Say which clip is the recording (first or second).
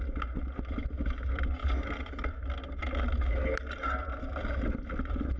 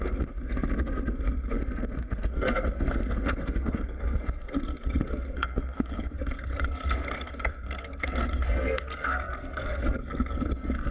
first